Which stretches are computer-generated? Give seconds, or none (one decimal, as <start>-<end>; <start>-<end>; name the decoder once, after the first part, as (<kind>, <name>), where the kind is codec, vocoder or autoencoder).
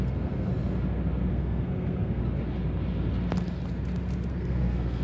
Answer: 0.0-0.5 (codec, SNAC); 1.3-2.2; 4.3-5.0